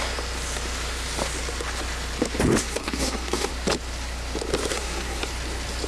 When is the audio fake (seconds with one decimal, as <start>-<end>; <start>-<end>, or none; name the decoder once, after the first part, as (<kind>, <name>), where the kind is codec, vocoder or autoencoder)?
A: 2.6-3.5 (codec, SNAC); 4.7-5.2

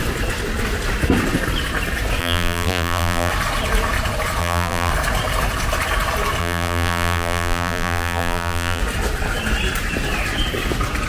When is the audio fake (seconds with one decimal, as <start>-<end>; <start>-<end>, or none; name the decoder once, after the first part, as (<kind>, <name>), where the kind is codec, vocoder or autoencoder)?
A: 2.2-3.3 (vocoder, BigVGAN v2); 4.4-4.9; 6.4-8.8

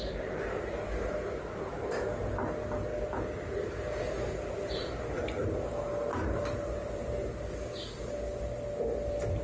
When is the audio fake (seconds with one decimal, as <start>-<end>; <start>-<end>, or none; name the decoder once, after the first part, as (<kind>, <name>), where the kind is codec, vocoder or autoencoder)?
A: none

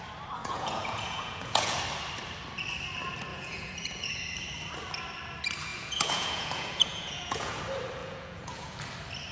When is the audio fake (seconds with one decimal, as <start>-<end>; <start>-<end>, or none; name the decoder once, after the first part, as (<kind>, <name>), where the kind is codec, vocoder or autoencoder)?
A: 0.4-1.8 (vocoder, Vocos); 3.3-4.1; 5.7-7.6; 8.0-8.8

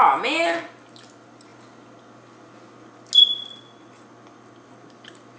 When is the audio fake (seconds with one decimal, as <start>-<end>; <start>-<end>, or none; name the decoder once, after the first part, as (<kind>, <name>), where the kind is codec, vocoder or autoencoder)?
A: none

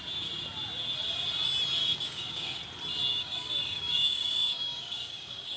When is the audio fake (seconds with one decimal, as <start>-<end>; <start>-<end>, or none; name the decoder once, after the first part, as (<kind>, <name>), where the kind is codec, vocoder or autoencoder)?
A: 1.8-2.6 (codec, DAC); 3.1-5.6